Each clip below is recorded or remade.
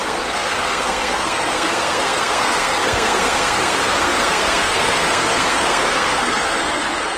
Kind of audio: remade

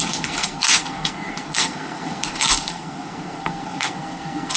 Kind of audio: remade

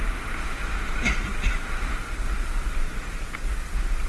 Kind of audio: recorded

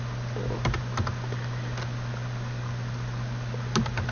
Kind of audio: recorded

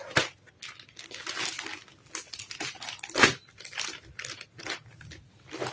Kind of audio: recorded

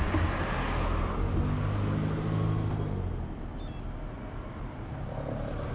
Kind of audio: recorded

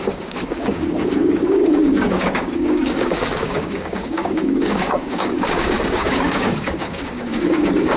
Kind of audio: remade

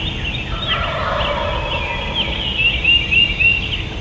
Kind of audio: recorded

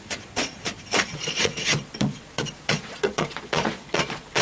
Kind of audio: remade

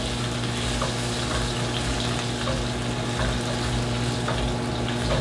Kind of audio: recorded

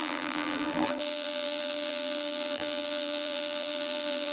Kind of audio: remade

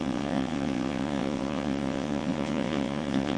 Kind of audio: remade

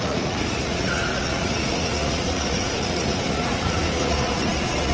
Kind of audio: remade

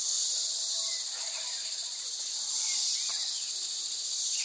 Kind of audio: remade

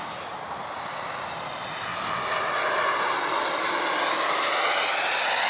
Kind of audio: recorded